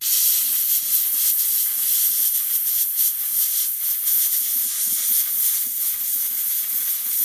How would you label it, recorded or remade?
recorded